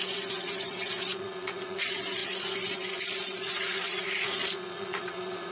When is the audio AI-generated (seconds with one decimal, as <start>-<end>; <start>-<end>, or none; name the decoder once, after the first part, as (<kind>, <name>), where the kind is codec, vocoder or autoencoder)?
0.0-5.5 (vocoder, Vocos)